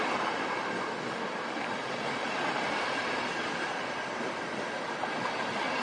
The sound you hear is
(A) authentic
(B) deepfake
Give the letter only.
A